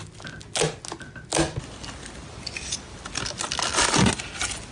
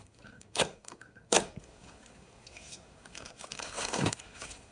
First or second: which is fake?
second